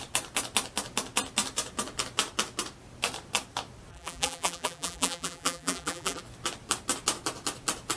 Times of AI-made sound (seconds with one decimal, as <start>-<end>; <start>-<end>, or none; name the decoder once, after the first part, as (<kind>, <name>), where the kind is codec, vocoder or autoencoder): 3.9-6.2 (vocoder, BigVGAN v2)